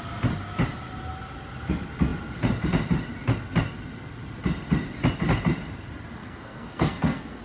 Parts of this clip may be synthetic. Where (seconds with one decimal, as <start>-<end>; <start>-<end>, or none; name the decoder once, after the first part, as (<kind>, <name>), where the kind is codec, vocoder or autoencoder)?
6.2-7.4 (codec, SNAC)